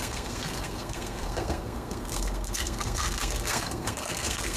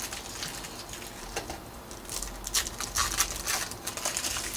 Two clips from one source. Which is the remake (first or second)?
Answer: first